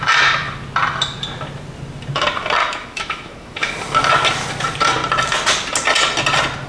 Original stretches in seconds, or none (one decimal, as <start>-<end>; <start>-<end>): 0.0-2.6; 3.7-6.7